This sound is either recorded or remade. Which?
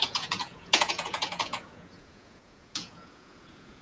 remade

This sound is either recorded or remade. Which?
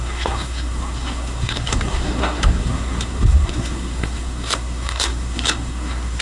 remade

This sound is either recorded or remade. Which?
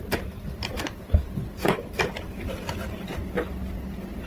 recorded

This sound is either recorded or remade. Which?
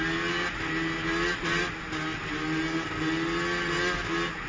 recorded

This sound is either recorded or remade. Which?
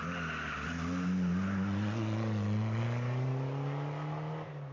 recorded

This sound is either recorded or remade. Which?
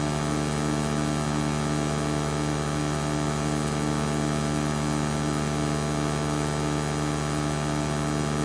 recorded